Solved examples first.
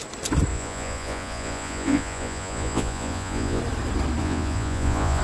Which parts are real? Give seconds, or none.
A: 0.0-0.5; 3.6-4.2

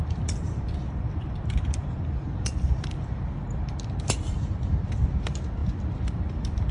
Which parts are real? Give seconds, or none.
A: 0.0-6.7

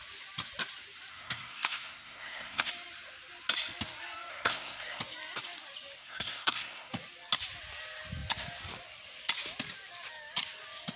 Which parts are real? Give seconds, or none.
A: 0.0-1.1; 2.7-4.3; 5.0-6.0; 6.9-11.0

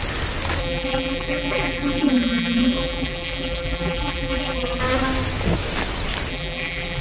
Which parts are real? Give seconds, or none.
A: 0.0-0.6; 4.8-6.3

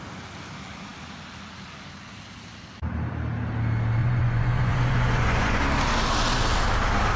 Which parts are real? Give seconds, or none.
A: 0.0-4.0; 5.6-7.2

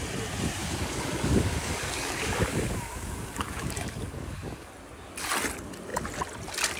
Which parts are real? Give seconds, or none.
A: 0.0-0.6; 4.7-6.8